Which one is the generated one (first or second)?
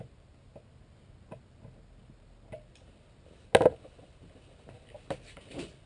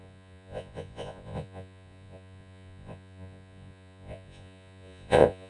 second